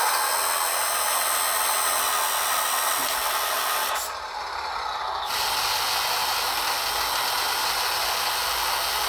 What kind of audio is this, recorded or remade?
recorded